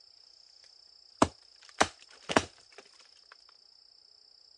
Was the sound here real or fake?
real